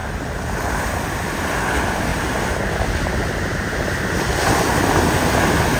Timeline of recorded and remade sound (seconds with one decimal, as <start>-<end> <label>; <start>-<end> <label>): 0.0-5.8 recorded